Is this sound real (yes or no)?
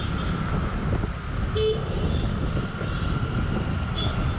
yes